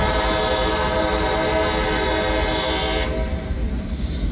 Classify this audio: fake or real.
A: real